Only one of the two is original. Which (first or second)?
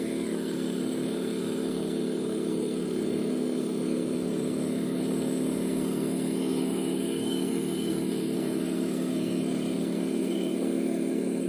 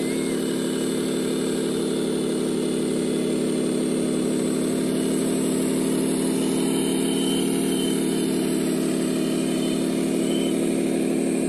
second